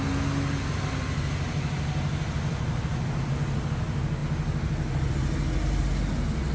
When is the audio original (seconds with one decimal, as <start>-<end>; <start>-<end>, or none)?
0.0-6.5